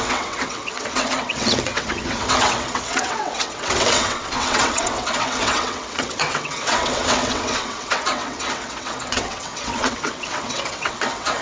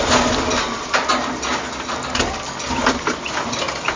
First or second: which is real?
second